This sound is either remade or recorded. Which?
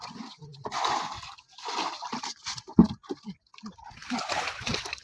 recorded